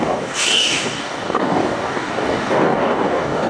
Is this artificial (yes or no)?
yes